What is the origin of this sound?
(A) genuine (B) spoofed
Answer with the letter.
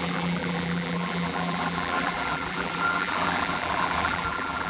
B